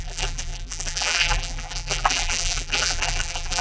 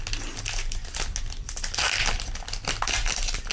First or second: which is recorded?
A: second